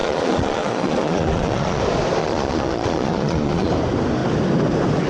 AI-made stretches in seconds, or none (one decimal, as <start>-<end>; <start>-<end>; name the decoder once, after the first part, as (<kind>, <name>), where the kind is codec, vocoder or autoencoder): 0.0-1.8 (vocoder, Vocos); 2.2-3.7